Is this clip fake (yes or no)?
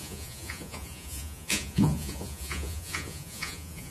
yes